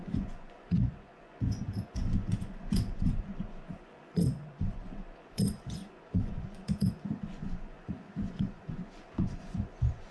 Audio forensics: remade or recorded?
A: remade